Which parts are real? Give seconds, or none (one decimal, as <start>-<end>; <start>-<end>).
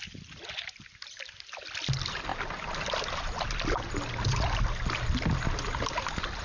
0.0-6.4